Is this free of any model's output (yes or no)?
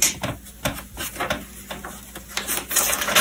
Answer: yes